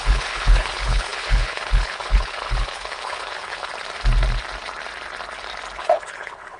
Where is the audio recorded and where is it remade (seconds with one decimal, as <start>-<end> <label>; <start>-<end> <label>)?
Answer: 0.0-3.7 remade; 3.7-5.8 recorded; 5.8-6.6 remade